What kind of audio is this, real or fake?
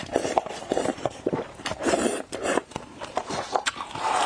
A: fake